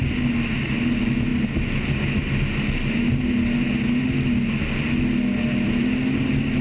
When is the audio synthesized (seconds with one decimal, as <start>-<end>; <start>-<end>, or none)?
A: none